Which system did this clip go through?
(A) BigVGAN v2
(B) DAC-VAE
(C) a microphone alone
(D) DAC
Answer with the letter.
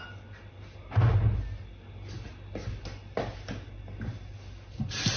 C